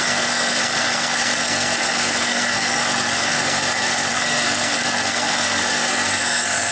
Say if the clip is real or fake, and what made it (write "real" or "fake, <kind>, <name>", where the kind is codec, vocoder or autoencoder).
fake, codec, SNAC